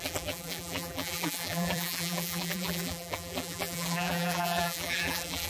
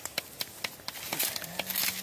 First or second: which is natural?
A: second